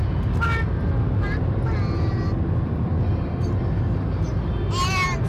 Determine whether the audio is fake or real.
real